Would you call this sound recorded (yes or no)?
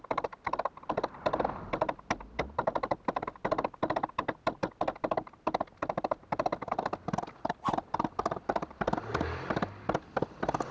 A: yes